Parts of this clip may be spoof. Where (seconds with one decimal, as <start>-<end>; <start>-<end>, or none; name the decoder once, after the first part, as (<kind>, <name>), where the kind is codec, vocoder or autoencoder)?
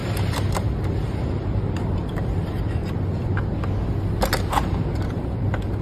0.0-2.8 (vocoder, BigVGAN v2); 4.6-5.8